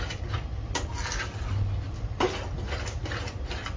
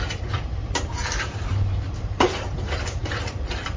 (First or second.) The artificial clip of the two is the second